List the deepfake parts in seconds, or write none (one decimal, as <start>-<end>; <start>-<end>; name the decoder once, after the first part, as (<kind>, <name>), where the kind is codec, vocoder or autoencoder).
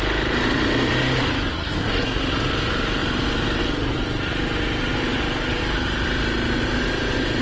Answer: 1.5-2.2 (codec, SNAC)